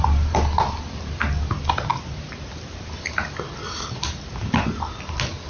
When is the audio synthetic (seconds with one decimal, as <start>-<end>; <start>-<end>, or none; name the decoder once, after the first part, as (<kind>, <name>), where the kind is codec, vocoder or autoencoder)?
none